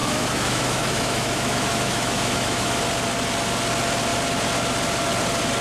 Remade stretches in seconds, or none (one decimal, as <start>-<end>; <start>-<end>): 0.0-2.8